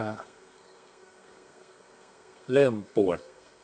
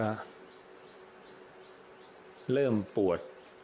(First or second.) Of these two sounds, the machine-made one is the first